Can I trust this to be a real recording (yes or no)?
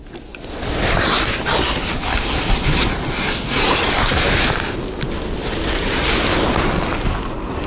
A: yes